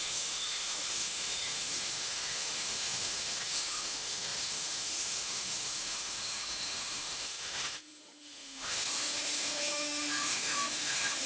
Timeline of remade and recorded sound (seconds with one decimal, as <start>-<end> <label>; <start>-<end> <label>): 0.0-11.3 remade